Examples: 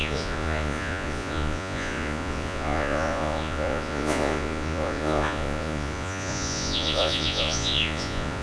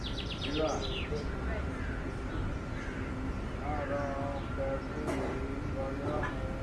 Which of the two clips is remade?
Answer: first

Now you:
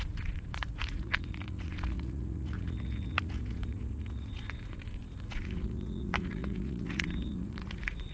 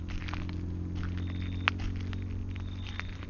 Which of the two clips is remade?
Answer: first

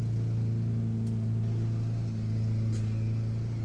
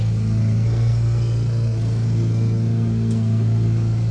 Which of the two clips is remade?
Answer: second